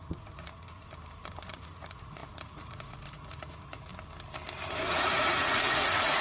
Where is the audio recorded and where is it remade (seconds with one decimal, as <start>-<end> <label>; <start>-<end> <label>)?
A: 0.0-0.8 remade; 0.8-1.4 recorded; 1.4-3.9 remade; 3.9-4.9 recorded; 4.9-6.2 remade